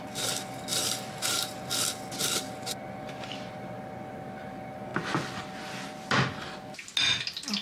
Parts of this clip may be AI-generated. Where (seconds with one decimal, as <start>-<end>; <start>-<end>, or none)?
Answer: none